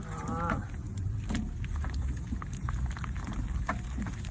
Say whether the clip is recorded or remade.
remade